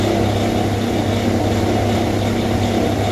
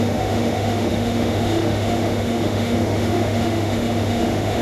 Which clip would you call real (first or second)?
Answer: first